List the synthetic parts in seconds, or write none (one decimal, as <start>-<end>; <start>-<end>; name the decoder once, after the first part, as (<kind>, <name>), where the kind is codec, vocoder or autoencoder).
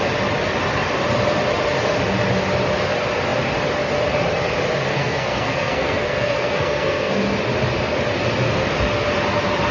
4.9-7.1 (codec, SNAC)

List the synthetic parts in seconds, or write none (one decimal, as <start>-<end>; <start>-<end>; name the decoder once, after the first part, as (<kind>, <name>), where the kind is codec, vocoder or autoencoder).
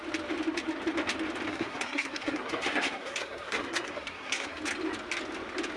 1.5-4.6 (codec, SNAC)